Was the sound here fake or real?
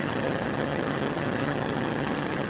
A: fake